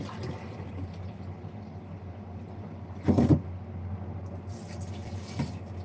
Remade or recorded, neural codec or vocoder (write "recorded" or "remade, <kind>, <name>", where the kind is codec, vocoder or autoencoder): recorded